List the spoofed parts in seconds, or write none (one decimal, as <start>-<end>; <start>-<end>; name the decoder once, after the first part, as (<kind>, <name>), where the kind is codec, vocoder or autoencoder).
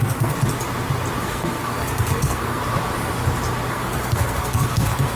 0.0-0.4 (codec, SNAC); 1.2-2.6; 3.7-5.2